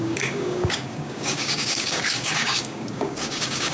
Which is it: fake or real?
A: fake